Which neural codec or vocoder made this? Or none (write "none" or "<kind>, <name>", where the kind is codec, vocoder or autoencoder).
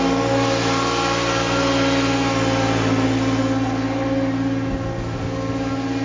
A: none